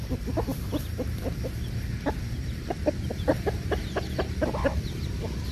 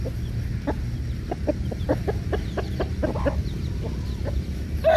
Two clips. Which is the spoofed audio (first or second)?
first